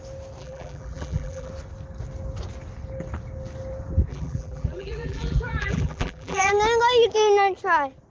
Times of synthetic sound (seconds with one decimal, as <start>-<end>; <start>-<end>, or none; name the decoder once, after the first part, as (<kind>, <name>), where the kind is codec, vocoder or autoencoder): 0.4-1.5 (vocoder, BigVGAN v2); 4.1-6.5